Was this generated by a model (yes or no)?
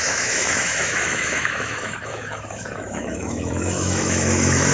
yes